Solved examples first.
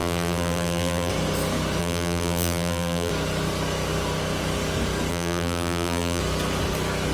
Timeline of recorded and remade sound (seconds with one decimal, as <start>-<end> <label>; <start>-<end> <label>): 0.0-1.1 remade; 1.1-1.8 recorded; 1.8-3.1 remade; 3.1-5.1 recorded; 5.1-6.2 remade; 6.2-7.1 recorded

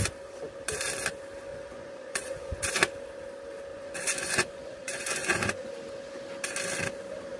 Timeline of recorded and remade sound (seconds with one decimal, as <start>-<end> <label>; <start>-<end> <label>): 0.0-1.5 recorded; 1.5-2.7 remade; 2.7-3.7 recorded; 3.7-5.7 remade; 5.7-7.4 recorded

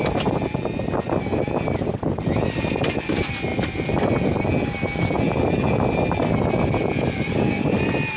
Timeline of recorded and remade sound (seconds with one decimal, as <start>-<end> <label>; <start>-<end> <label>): 0.0-8.2 recorded

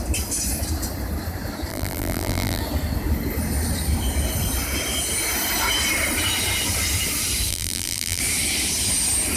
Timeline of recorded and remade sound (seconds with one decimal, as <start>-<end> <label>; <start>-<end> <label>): 0.0-1.7 recorded; 1.7-2.6 remade; 2.6-7.5 recorded; 7.5-8.2 remade; 8.2-9.4 recorded

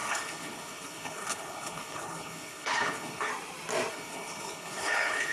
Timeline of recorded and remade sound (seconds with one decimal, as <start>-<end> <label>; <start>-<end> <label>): 0.0-3.3 remade; 3.3-3.9 recorded; 3.9-5.3 remade